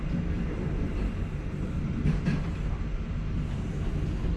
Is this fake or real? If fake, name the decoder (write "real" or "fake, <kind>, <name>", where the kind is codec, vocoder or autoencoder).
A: real